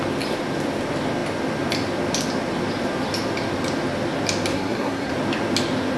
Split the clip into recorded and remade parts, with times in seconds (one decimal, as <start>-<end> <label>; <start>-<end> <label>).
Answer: 0.0-4.5 recorded; 4.5-5.1 remade; 5.1-6.0 recorded